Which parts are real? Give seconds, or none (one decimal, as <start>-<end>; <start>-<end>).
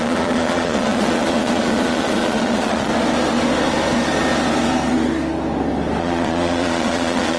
2.9-6.0